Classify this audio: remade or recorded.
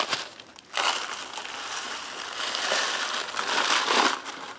recorded